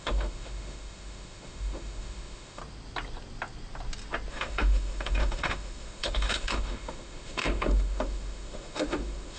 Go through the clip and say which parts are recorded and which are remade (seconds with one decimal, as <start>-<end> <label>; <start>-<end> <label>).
0.0-2.6 remade; 2.6-4.3 recorded; 4.3-9.4 remade